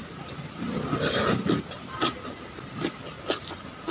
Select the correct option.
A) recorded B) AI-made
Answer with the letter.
A